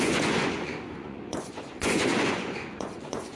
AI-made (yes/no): yes